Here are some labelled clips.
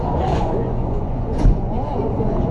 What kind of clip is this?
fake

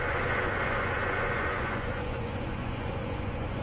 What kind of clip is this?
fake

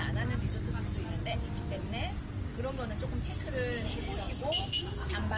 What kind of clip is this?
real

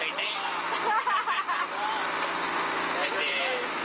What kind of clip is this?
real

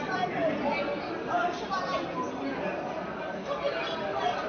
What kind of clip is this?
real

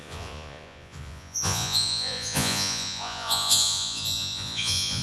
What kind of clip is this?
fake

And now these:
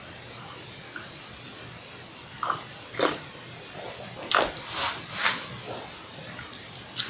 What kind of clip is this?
real